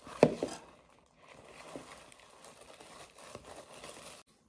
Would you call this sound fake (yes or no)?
no